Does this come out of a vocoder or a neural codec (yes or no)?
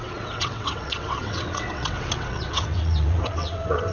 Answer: yes